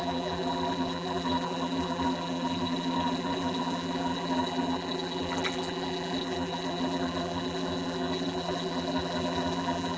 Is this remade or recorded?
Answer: remade